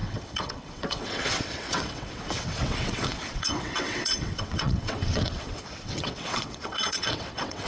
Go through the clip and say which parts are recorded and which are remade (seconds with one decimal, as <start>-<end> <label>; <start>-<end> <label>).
0.0-7.7 remade

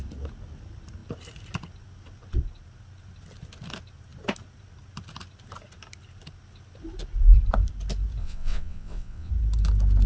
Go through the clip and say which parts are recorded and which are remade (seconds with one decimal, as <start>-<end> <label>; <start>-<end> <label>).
0.0-8.2 recorded; 8.2-9.3 remade; 9.3-10.1 recorded

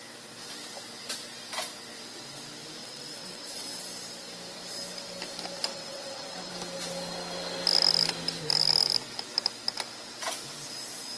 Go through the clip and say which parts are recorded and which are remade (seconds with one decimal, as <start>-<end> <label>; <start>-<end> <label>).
0.0-2.8 recorded; 2.8-3.8 remade; 3.8-5.7 recorded; 5.7-6.5 remade; 6.5-11.2 recorded